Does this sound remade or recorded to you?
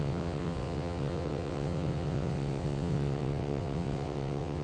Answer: remade